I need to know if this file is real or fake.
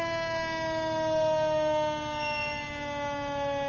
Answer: real